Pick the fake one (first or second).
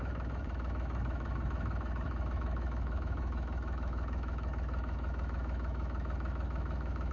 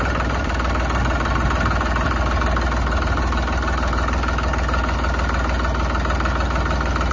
first